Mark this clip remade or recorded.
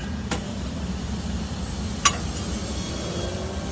recorded